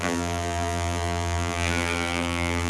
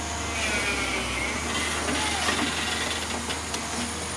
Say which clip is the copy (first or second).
first